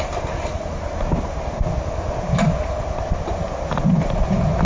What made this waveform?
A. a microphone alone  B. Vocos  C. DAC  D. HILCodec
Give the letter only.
A